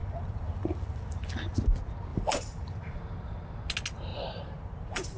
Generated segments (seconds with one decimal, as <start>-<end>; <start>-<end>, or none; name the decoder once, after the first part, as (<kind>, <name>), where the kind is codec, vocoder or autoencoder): 0.0-1.3 (vocoder, BigVGAN v2); 2.1-3.0; 4.1-5.2